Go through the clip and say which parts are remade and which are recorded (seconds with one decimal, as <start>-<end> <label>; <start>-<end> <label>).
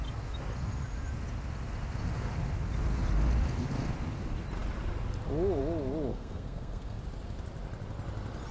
0.0-6.1 recorded; 6.1-7.0 remade; 7.0-8.5 recorded